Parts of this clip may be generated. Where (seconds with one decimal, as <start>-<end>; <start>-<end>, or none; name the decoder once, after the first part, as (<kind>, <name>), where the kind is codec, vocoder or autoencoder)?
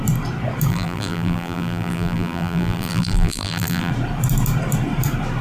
0.7-3.9 (vocoder, BigVGAN v2)